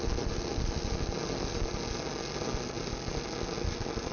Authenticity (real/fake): real